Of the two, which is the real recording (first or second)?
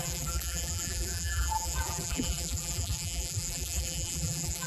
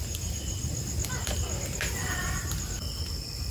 second